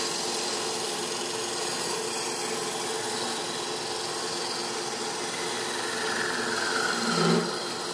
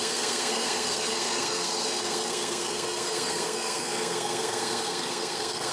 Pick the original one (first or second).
first